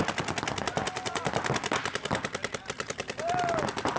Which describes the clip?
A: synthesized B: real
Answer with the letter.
B